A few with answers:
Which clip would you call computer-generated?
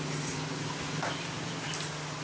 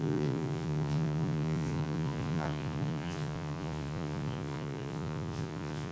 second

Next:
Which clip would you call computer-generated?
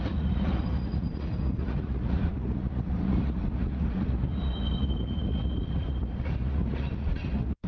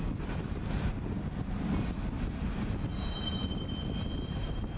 first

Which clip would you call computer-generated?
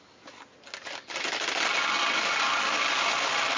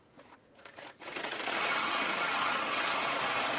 second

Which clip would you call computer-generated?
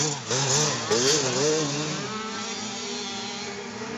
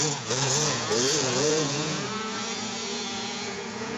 second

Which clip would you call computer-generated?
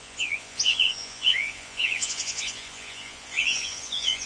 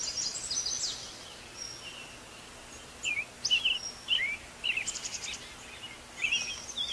first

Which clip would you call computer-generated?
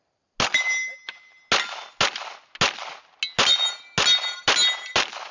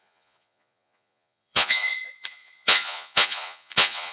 second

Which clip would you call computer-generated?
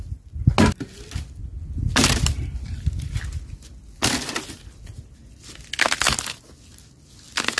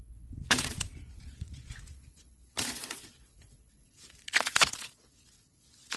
second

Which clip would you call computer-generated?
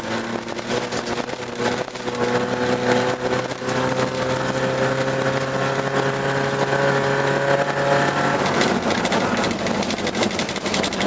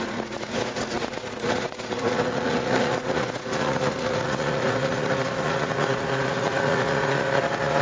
second